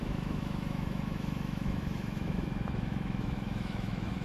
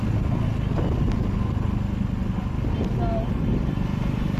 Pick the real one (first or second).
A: second